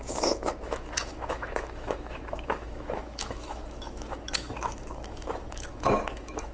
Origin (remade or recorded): remade